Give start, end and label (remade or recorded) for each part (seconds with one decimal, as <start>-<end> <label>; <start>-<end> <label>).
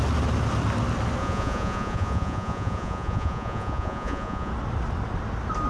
0.0-1.2 recorded; 1.2-4.5 remade; 4.5-5.7 recorded